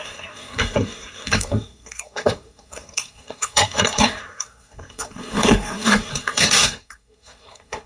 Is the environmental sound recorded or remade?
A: remade